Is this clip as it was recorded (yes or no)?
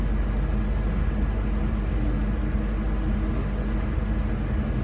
yes